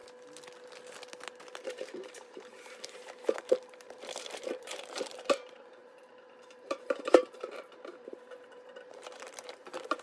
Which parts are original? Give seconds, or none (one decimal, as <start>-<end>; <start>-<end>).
0.0-1.6